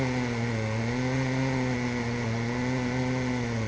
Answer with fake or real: real